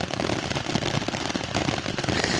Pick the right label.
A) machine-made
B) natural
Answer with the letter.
B